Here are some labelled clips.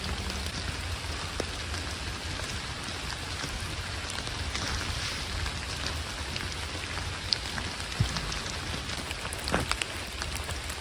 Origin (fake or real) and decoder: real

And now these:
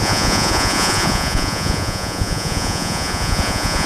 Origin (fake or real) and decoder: fake, vocoder, Vocos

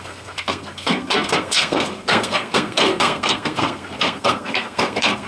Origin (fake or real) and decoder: fake, codec, SNAC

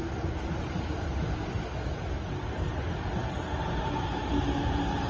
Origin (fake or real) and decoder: real